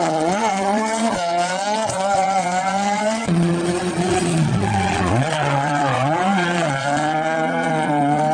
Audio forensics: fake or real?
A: fake